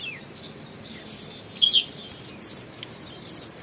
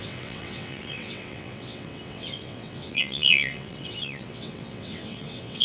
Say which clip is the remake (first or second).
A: second